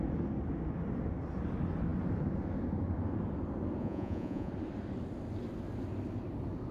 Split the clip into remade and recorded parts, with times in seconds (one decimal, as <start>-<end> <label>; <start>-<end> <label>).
0.0-3.8 recorded; 3.8-4.5 remade; 4.5-6.7 recorded